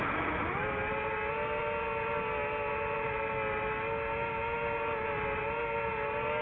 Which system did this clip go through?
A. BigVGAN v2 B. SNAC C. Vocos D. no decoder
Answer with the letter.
D